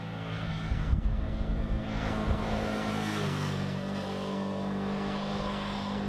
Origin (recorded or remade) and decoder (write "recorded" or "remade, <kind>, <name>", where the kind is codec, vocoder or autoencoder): remade, codec, SNAC